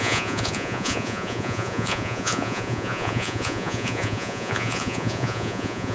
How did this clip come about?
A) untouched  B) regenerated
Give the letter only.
B